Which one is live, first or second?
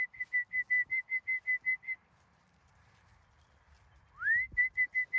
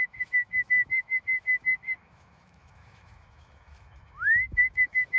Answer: first